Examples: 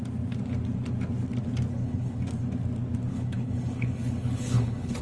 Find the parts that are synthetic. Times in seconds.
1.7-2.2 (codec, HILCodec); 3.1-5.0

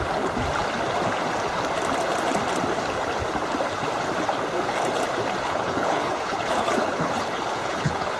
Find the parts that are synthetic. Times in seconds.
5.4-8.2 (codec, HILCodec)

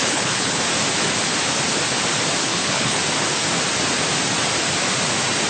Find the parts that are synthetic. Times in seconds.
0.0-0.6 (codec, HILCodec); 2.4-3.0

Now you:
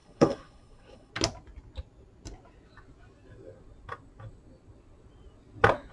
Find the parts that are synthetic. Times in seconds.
0.0-1.1 (codec, HILCodec)